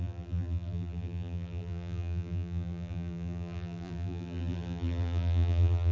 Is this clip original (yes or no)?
no